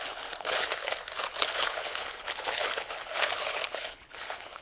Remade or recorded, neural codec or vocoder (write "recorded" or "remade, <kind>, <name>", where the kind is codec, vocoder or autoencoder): remade, codec, HILCodec